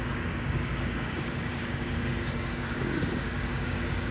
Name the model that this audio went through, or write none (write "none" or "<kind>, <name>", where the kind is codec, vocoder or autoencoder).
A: codec, DAC